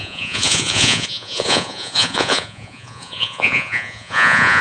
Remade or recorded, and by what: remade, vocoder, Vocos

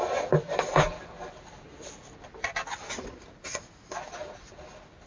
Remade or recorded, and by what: recorded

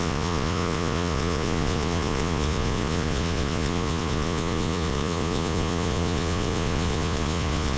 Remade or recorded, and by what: remade, vocoder, Vocos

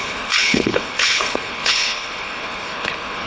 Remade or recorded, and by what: remade, codec, HILCodec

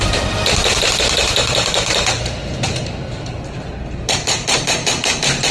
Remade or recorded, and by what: remade, vocoder, BigVGAN v2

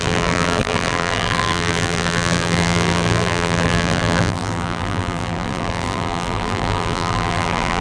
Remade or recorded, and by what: remade, vocoder, BigVGAN v2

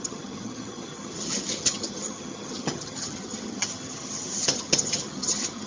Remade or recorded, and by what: remade, vocoder, HiFi-GAN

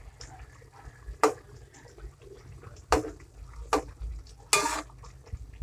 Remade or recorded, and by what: recorded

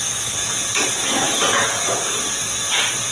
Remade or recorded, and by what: remade, vocoder, Vocos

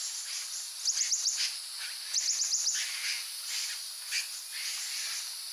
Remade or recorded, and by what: recorded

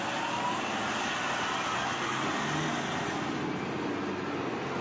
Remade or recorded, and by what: recorded